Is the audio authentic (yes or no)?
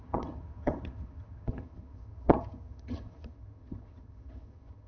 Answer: no